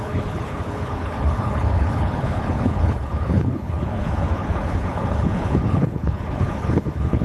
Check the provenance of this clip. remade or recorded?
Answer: remade